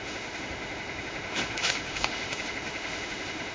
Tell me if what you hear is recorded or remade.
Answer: remade